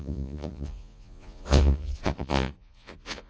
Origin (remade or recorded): remade